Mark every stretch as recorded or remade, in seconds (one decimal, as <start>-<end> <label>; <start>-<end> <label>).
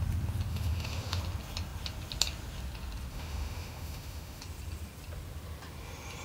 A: 0.0-0.5 recorded; 0.5-1.2 remade; 1.2-3.1 recorded; 3.1-4.4 remade; 4.4-6.2 recorded